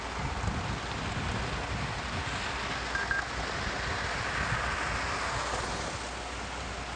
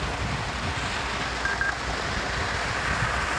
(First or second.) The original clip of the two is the first